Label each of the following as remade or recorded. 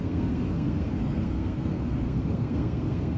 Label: remade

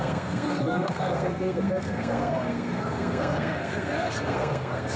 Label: remade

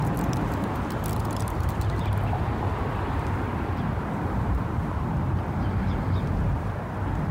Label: recorded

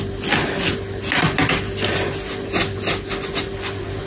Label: recorded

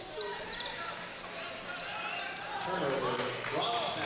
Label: recorded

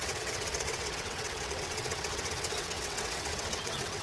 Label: remade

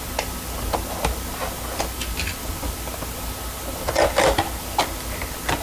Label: recorded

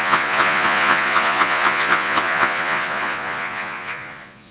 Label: remade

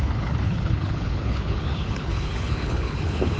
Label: remade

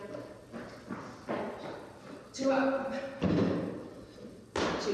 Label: recorded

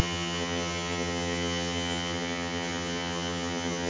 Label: remade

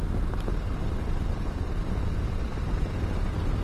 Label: recorded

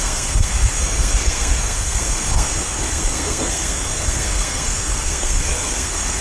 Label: remade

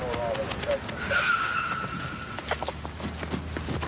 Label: recorded